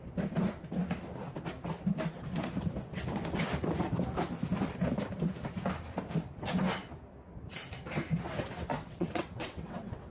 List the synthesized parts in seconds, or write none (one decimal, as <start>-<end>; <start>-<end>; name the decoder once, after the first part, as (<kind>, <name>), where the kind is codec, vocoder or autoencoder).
8.7-10.1 (vocoder, WaveNeXt)